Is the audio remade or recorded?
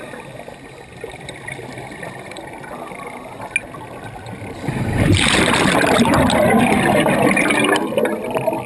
recorded